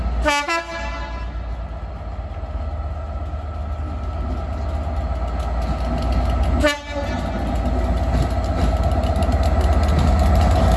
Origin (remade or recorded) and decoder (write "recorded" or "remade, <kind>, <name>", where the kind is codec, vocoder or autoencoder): recorded